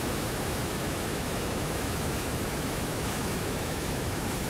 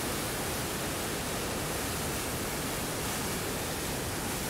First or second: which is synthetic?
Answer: first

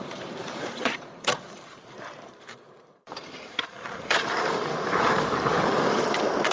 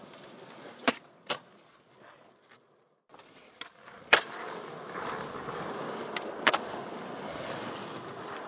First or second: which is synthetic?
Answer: first